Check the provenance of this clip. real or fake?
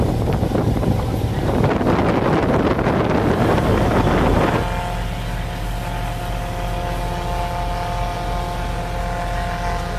real